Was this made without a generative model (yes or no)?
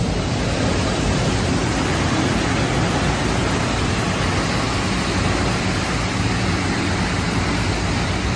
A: yes